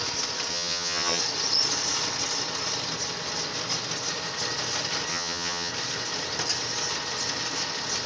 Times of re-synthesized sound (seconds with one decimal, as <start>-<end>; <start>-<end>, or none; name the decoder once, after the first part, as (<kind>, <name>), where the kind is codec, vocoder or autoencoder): 0.5-1.2 (vocoder, HiFi-GAN); 5.1-5.7